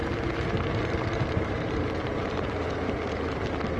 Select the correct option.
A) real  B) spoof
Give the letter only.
B